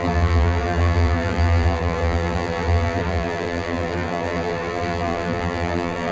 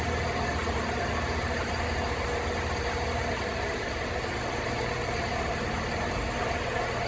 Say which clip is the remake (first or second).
first